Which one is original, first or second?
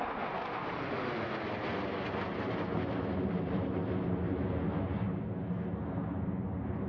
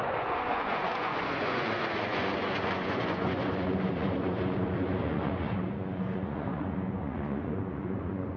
first